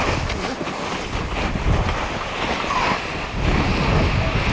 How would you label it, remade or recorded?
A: remade